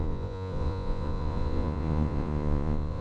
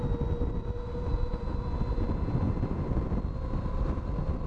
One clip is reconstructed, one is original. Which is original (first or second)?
second